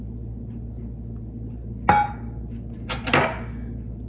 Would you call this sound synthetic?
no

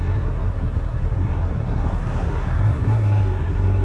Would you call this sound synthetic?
yes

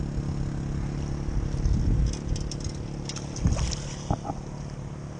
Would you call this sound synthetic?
no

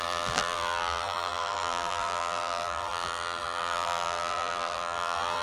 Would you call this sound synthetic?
yes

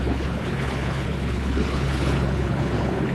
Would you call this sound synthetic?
yes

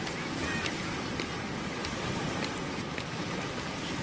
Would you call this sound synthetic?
no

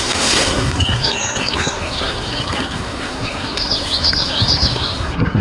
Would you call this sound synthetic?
yes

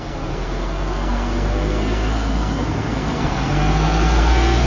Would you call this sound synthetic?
yes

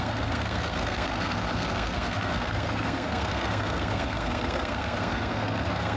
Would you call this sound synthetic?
yes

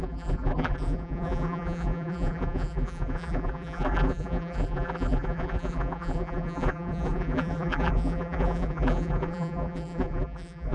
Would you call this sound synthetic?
yes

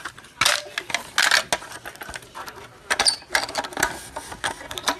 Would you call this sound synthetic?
no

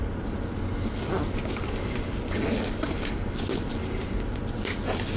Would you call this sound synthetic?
no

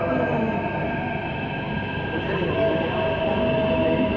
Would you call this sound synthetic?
no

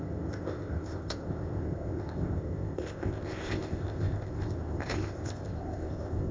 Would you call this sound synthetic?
yes